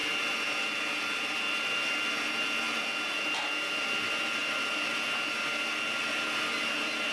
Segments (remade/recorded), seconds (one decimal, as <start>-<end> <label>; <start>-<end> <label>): 0.0-7.1 recorded